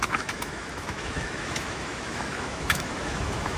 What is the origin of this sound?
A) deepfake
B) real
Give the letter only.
A